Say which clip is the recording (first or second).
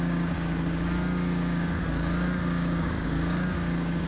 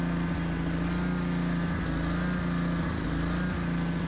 second